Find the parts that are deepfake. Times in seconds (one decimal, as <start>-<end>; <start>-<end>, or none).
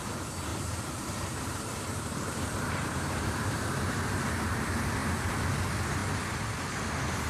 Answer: 0.5-4.0; 5.0-5.6